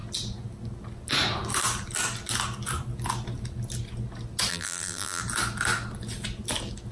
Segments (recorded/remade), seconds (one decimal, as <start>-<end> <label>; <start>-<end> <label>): 0.0-4.5 recorded; 4.5-5.2 remade; 5.2-6.9 recorded